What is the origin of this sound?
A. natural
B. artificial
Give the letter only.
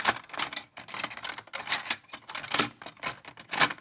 A